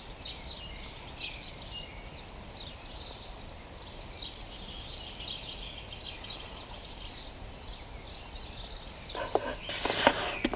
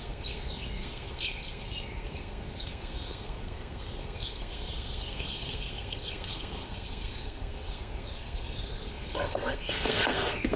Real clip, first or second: first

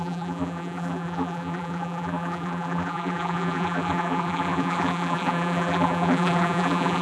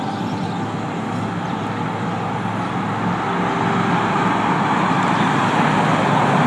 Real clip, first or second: second